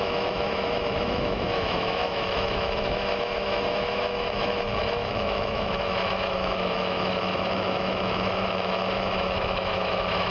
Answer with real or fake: fake